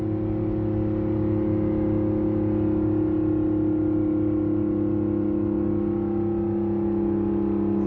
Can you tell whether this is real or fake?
real